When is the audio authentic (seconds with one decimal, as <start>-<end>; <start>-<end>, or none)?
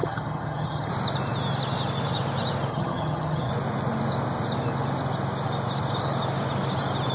0.9-2.7; 3.5-7.1